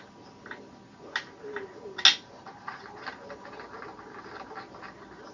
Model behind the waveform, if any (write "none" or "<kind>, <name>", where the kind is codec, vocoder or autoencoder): none